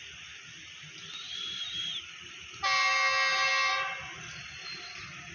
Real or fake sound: real